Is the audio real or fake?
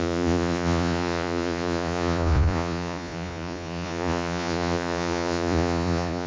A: fake